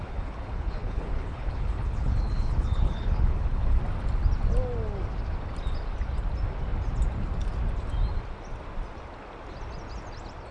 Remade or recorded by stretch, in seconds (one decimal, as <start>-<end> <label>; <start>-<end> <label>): 0.0-3.8 remade; 3.8-10.5 recorded